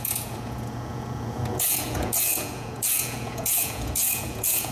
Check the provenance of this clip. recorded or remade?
remade